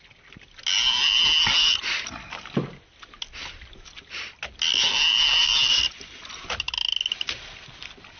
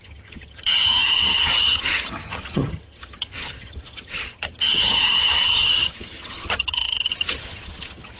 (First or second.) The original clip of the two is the first